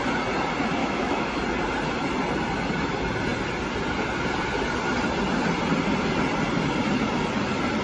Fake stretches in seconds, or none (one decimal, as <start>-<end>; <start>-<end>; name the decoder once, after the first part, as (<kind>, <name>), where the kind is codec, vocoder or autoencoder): 0.8-1.4 (autoencoder, DAC-VAE)